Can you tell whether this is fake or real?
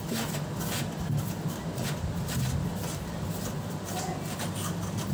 real